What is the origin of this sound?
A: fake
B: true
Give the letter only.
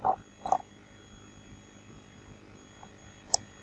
A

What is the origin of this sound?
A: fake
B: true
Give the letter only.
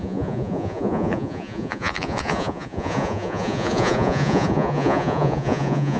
A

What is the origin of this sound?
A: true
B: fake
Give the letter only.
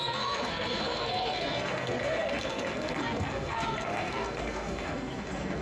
B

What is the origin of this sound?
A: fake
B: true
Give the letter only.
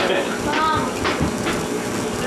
B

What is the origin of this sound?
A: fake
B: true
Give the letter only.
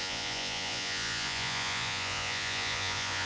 A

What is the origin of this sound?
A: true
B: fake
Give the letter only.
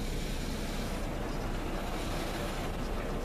A